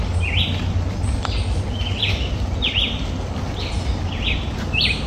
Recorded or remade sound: recorded